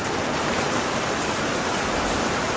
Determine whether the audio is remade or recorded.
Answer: remade